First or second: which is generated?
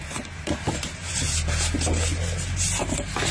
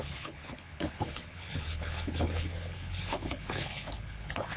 second